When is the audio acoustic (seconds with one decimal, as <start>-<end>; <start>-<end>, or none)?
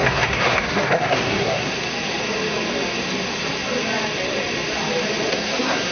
1.8-5.3